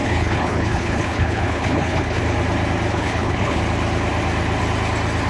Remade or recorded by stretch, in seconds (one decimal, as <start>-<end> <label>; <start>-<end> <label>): 0.0-2.2 remade; 2.2-2.9 recorded; 2.9-3.6 remade; 3.6-5.3 recorded